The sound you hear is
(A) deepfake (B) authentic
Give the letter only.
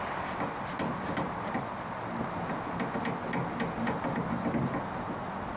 B